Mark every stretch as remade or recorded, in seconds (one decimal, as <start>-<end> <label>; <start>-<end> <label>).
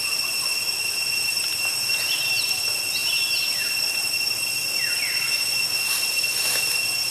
0.0-7.1 recorded